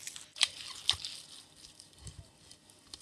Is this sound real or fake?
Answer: real